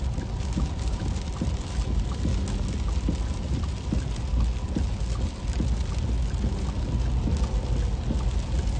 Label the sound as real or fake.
real